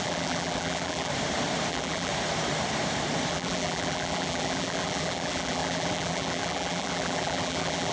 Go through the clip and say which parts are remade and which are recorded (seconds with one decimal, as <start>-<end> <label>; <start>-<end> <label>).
0.0-1.1 remade; 1.1-1.7 recorded; 1.7-2.1 remade; 2.1-3.3 recorded; 3.3-7.9 remade